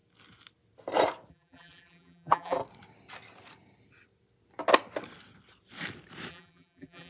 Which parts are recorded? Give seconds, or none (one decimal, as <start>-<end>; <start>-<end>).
0.0-1.3; 2.6-6.3